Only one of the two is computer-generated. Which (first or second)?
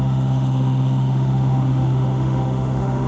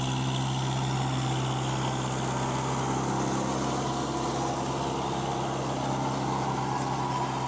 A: first